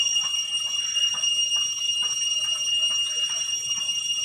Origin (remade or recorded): recorded